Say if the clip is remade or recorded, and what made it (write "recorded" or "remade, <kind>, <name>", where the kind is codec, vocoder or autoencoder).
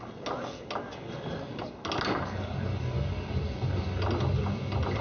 recorded